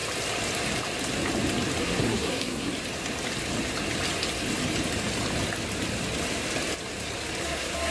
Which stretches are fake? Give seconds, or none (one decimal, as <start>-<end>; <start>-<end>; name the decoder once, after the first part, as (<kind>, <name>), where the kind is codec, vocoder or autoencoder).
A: 1.8-2.7 (codec, SNAC); 7.4-7.9